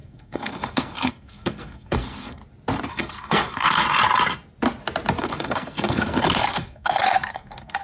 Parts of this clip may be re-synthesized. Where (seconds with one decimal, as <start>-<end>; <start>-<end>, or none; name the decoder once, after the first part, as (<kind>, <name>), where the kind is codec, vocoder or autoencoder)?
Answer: 0.0-2.4 (codec, SNAC); 2.9-3.8; 5.2-7.8